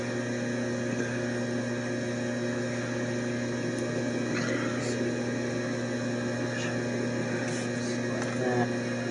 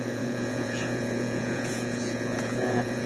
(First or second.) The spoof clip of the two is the second